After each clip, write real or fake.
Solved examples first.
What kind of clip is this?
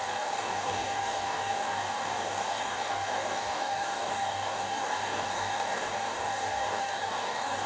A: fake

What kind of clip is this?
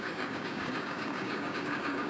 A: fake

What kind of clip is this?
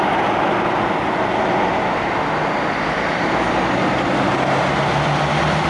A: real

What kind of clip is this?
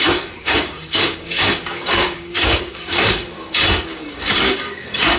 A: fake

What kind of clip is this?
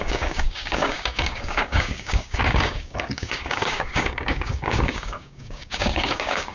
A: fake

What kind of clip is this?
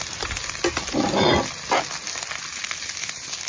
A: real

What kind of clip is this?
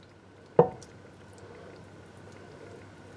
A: real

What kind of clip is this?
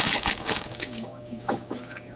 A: fake